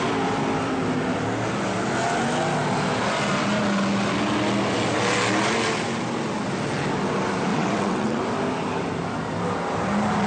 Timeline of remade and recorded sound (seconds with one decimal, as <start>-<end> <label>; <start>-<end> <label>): 0.0-7.5 recorded; 7.5-8.2 remade; 8.2-10.3 recorded